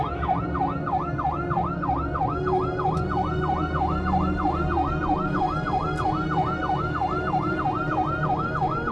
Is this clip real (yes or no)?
yes